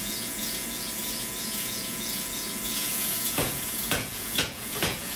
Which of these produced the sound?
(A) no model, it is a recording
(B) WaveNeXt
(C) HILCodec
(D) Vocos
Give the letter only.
D